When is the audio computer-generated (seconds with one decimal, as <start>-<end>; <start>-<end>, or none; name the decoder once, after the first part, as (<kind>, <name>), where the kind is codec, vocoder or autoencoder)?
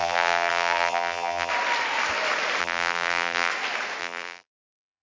0.0-1.5 (vocoder, BigVGAN v2); 2.6-3.5; 4.0-5.0